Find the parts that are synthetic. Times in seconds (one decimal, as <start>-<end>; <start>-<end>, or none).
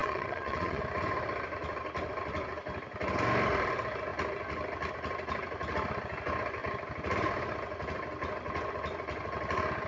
0.0-0.8